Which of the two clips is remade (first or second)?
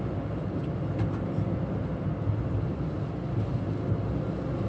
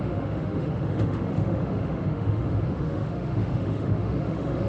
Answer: second